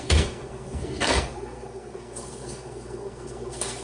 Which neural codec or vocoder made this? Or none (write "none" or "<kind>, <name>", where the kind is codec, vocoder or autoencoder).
codec, SNAC